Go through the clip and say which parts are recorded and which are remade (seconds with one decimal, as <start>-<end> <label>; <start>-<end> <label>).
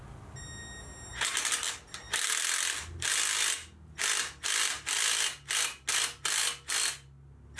0.0-7.6 recorded